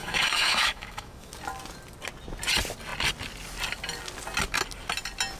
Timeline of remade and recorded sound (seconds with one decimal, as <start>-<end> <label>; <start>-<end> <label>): 0.0-1.3 remade; 1.3-5.4 recorded